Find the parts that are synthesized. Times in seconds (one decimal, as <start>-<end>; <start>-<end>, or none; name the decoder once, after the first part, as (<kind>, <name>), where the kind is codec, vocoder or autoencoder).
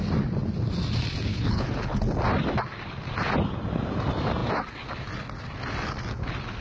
1.3-2.0 (codec, HILCodec)